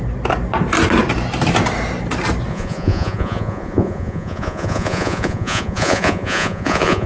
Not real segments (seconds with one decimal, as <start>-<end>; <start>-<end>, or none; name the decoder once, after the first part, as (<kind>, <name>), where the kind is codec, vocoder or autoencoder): 2.5-7.1 (vocoder, Vocos)